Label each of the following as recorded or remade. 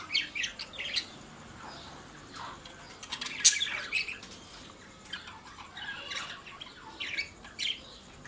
recorded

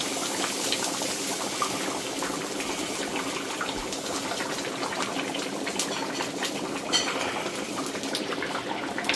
recorded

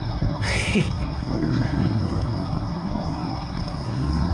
remade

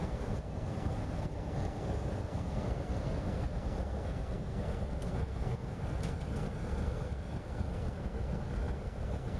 remade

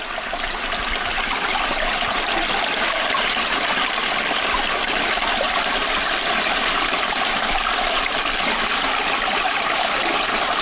recorded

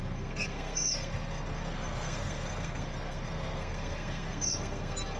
remade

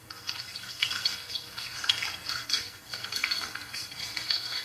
remade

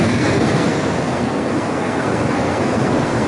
remade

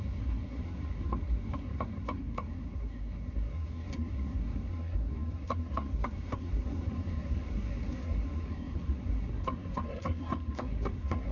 remade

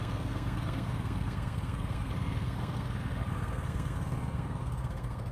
remade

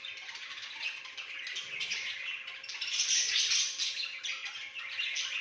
recorded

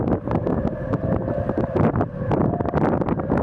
recorded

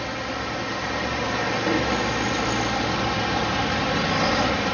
recorded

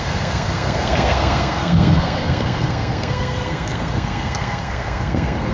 remade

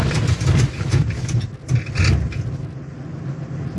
recorded